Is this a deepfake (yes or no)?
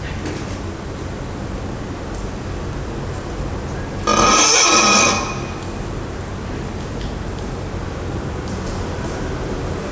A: no